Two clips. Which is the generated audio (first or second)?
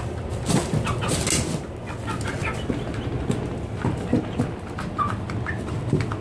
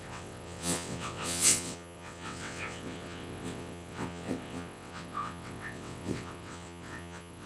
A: second